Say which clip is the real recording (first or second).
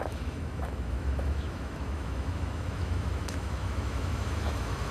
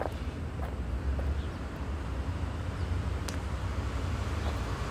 second